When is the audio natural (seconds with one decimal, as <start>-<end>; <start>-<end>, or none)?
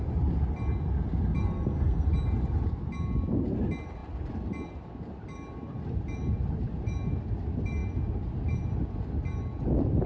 0.0-1.4; 2.1-10.1